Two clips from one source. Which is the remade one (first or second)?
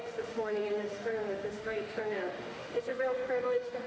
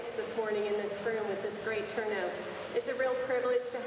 first